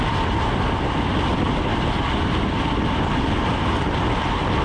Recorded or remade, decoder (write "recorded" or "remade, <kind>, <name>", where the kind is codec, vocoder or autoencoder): recorded